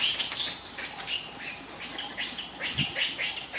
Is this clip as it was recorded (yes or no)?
yes